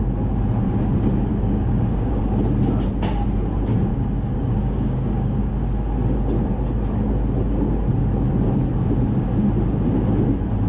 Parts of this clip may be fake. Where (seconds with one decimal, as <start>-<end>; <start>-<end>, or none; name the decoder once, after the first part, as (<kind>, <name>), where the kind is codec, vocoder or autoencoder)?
1.3-2.2 (codec, DAC); 3.9-5.5